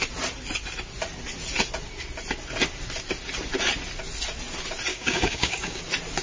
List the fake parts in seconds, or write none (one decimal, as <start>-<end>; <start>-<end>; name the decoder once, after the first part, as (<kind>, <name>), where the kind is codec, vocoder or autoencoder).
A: 4.9-5.8 (codec, DAC)